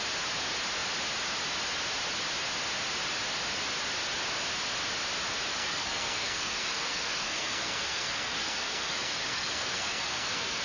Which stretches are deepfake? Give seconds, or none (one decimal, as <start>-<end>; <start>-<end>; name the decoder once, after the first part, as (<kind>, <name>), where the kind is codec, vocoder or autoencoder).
5.5-10.6 (codec, SNAC)

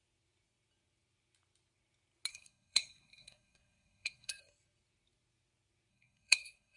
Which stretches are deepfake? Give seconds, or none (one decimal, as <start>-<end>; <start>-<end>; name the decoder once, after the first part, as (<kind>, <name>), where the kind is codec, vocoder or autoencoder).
2.3-4.4 (codec, SNAC); 5.9-6.8

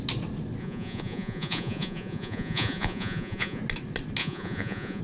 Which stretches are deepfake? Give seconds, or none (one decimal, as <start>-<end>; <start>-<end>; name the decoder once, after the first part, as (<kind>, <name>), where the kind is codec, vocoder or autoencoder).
0.6-3.6 (vocoder, Vocos); 4.2-5.0

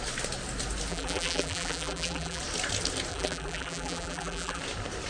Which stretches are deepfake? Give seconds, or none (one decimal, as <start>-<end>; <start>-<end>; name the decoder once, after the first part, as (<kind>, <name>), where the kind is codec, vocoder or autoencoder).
0.9-2.4 (vocoder, BigVGAN v2); 3.1-4.6

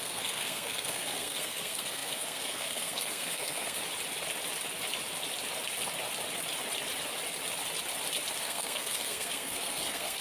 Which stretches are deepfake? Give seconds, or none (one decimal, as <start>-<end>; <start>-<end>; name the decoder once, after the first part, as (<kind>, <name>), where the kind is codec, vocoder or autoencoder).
0.0-3.8 (codec, SNAC); 8.4-10.2